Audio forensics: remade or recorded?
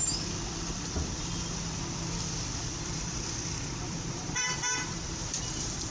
remade